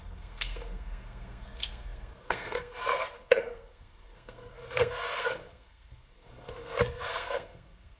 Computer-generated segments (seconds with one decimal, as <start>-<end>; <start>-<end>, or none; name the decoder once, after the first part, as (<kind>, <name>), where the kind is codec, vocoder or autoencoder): 0.0-8.0 (codec, SNAC)